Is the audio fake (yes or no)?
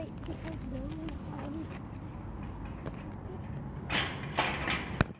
no